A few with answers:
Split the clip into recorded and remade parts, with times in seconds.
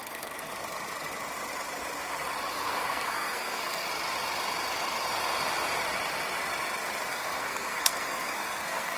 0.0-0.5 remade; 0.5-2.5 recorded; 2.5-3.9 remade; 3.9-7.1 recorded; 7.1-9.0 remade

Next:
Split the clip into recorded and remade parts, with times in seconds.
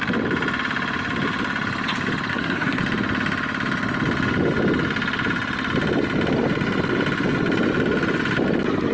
0.0-2.3 recorded; 2.3-2.8 remade; 2.8-8.9 recorded